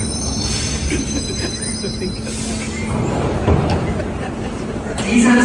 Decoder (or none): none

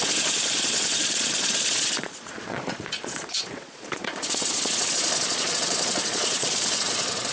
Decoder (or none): vocoder, Vocos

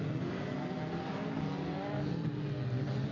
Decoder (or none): none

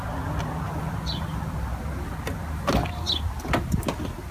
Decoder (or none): none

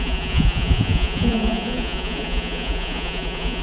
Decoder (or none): vocoder, Vocos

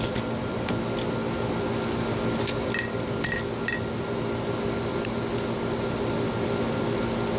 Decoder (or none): none